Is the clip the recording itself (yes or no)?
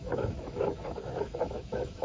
no